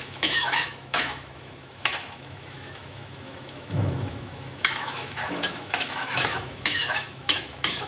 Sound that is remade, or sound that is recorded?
remade